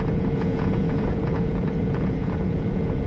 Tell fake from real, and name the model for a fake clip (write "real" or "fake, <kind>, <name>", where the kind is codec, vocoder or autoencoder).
fake, vocoder, Vocos